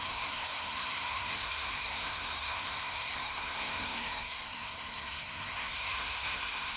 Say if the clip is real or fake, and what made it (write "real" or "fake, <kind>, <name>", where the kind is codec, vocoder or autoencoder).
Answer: fake, codec, SNAC